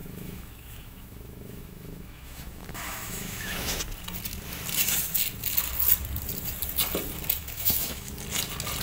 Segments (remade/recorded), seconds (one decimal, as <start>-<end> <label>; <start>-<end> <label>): 0.0-3.8 remade; 3.8-7.4 recorded; 7.4-8.1 remade; 8.1-8.8 recorded

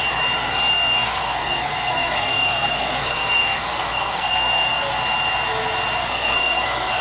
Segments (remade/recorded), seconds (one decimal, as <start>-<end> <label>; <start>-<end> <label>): 0.0-0.7 recorded; 0.7-4.9 remade; 4.9-6.0 recorded; 6.0-7.0 remade

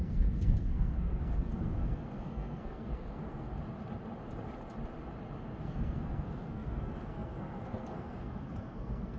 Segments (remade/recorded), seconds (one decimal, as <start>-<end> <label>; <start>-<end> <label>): 0.0-3.5 remade; 3.5-5.6 recorded; 5.6-9.2 remade

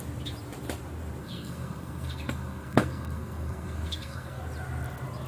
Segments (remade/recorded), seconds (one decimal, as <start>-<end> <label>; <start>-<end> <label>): 0.0-1.2 recorded; 1.2-4.4 remade; 4.4-5.3 recorded

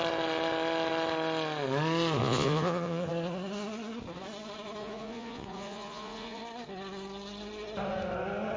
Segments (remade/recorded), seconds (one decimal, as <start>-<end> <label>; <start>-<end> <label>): 0.0-2.2 recorded; 2.2-3.1 remade; 3.1-4.8 recorded; 4.8-6.4 remade; 6.4-8.6 recorded

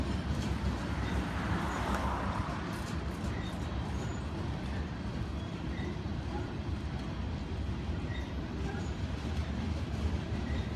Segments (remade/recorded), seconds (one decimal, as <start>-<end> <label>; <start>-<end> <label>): 0.0-4.1 remade; 4.1-5.3 recorded; 5.3-10.8 remade

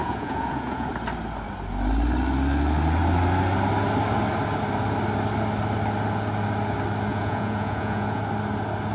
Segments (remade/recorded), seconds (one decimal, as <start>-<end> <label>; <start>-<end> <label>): 0.0-0.9 remade; 0.9-7.1 recorded; 7.1-8.2 remade; 8.2-8.9 recorded